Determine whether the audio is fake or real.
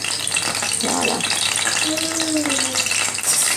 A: real